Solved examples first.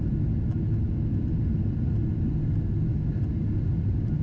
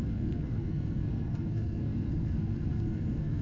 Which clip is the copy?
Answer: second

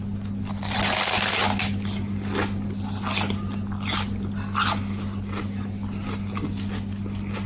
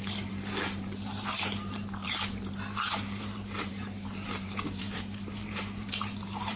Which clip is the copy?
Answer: second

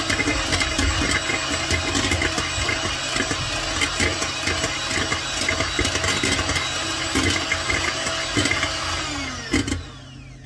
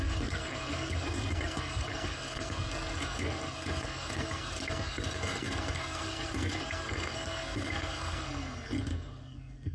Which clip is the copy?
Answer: second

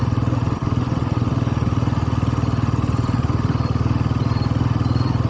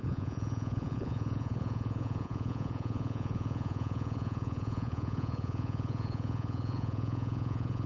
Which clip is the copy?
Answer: second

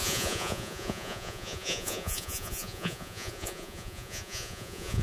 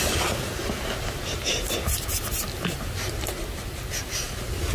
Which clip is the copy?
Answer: first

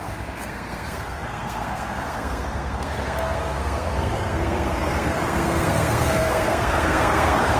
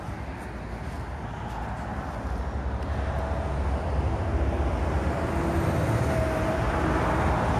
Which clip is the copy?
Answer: first